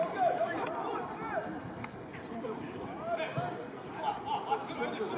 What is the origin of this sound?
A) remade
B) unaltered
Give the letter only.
B